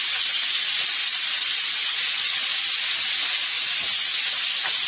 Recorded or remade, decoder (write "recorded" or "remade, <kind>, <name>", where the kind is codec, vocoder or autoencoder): recorded